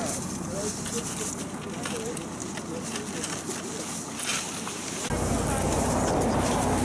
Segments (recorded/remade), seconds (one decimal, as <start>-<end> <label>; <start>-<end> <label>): 0.0-6.8 recorded